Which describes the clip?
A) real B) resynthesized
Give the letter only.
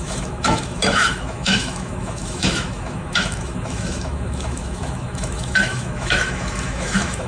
B